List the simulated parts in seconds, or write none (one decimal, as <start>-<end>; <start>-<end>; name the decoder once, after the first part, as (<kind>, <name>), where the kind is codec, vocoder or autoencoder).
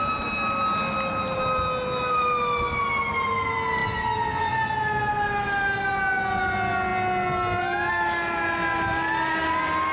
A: none